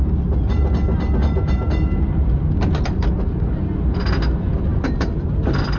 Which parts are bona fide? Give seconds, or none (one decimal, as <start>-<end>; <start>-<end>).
0.0-4.7; 5.3-5.8